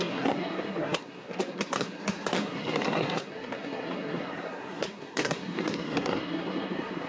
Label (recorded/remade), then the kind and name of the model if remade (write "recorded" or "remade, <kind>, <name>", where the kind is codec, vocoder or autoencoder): remade, codec, SNAC